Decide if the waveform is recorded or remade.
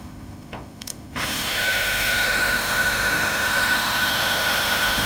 remade